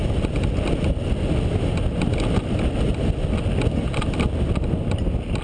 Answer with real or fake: real